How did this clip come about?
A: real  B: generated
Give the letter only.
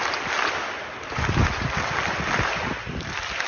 B